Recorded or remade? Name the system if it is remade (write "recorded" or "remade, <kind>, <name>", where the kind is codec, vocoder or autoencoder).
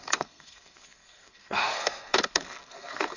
remade, codec, SNAC